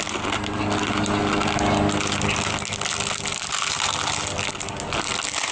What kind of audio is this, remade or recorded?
recorded